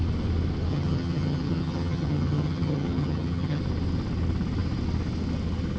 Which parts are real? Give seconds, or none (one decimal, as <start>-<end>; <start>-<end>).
0.0-0.7; 3.6-5.8